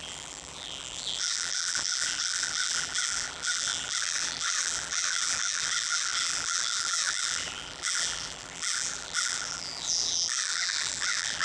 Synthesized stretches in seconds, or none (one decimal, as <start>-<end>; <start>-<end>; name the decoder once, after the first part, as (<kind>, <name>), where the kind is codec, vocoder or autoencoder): 0.0-11.4 (vocoder, BigVGAN v2)